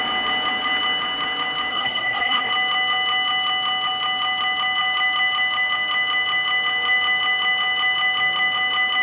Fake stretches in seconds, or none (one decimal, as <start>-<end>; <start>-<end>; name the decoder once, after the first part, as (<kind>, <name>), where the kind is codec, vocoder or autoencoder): 1.7-2.5 (codec, SNAC)